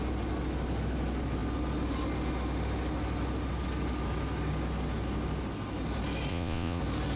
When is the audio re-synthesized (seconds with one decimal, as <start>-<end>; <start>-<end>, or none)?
6.3-6.8